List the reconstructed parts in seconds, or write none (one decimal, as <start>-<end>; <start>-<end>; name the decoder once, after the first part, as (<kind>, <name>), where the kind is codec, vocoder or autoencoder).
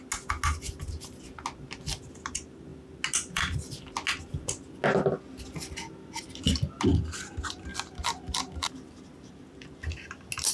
none